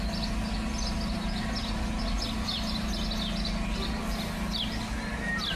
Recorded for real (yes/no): yes